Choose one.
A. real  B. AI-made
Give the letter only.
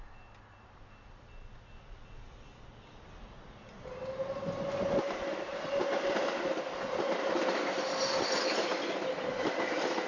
A